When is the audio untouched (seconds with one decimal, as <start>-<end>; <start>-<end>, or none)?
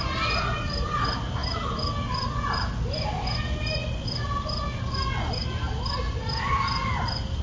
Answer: 0.0-7.4